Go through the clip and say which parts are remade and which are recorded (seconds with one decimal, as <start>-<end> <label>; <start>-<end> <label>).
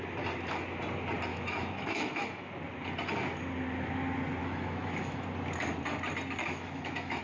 0.0-1.3 recorded; 1.3-2.5 remade; 2.5-4.4 recorded; 4.4-5.2 remade; 5.2-6.4 recorded; 6.4-7.2 remade